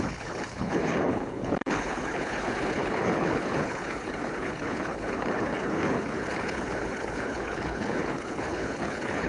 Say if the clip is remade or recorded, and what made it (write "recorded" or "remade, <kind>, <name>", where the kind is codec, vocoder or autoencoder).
remade, codec, HILCodec